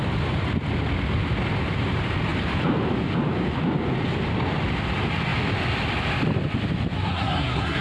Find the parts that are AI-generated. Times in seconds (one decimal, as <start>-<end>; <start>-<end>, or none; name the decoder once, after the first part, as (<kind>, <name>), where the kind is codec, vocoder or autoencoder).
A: 7.0-7.8 (codec, SNAC)